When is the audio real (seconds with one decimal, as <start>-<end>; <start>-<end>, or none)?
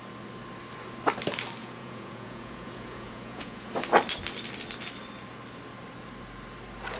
0.0-1.6; 3.7-7.0